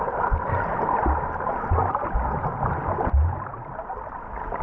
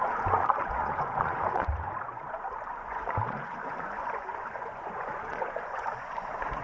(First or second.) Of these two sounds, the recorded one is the first